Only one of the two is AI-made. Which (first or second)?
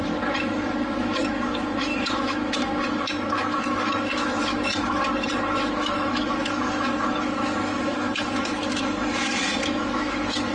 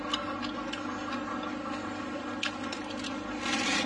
first